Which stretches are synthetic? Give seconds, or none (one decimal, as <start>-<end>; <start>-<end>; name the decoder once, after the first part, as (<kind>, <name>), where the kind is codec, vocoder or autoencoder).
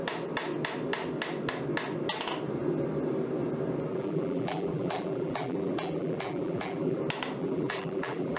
3.9-7.0 (vocoder, BigVGAN v2); 7.4-8.4